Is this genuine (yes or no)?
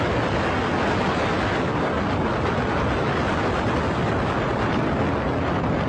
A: yes